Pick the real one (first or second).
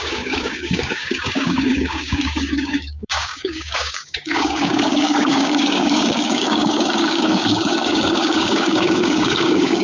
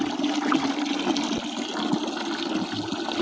second